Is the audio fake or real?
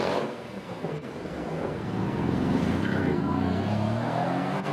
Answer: fake